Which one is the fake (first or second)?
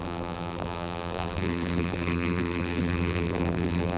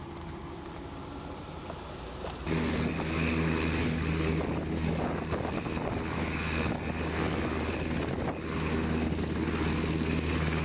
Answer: first